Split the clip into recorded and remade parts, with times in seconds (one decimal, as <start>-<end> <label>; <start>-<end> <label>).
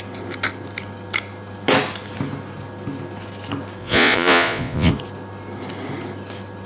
0.0-3.8 recorded; 3.8-4.9 remade; 4.9-6.7 recorded